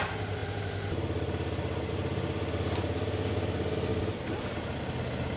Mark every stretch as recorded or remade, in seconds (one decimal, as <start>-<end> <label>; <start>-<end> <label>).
0.0-5.4 recorded